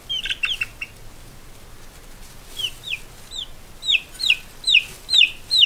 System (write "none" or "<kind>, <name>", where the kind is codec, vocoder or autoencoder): none